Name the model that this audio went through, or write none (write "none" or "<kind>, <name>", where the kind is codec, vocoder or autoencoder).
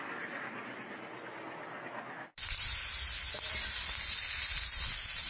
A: none